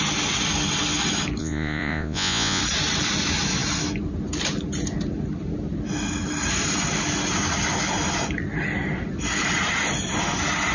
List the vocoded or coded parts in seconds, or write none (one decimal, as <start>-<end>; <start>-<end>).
1.4-2.6